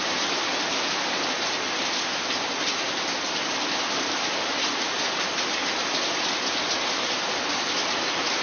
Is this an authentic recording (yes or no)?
yes